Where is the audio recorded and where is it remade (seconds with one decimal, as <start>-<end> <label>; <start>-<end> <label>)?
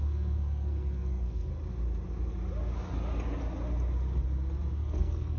0.0-1.5 remade; 1.5-4.7 recorded; 4.7-5.4 remade